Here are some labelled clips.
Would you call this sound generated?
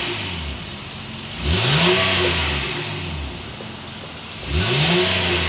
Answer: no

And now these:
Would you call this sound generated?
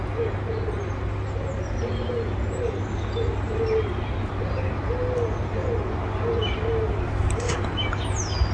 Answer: no